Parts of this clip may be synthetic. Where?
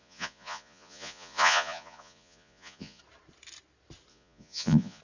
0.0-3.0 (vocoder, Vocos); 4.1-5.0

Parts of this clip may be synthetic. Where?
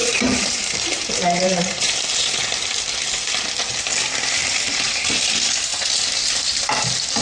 0.0-2.0 (vocoder, BigVGAN v2); 4.4-5.1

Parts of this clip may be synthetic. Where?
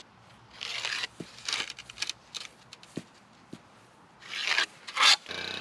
none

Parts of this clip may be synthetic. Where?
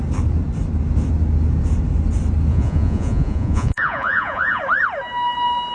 2.5-4.6 (vocoder, Vocos)